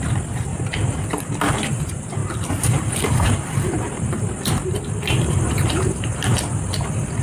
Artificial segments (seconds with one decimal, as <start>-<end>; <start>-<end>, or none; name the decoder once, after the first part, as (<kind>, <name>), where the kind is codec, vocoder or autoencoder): 0.0-0.5 (vocoder, BigVGAN v2); 1.5-6.3